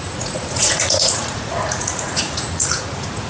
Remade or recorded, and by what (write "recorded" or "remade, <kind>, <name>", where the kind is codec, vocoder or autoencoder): remade, vocoder, Vocos